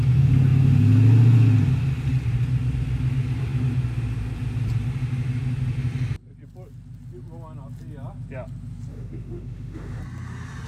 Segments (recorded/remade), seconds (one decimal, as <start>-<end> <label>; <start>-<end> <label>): 0.0-8.9 recorded; 8.9-10.0 remade; 10.0-10.7 recorded